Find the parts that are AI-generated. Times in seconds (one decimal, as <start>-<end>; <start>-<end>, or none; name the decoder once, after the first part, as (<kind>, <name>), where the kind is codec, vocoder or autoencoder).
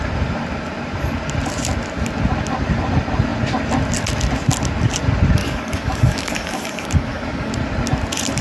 5.4-7.5 (codec, DAC)